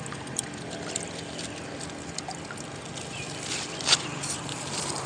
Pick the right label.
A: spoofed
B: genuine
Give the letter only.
B